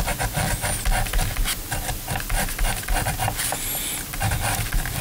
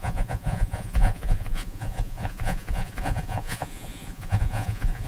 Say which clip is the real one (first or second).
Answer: first